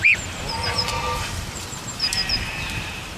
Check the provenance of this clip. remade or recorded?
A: remade